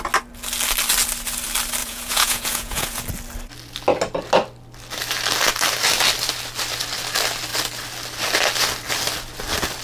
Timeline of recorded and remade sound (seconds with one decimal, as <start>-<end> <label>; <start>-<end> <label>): 0.0-1.8 recorded; 1.8-3.0 remade; 3.0-9.8 recorded